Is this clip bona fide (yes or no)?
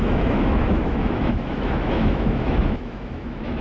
no